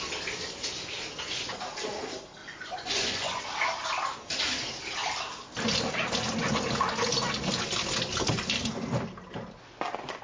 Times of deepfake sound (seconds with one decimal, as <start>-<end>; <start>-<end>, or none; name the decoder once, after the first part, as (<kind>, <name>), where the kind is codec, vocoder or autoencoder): 2.4-3.4 (vocoder, Vocos)